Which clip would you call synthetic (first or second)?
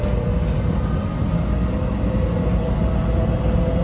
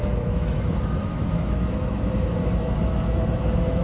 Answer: second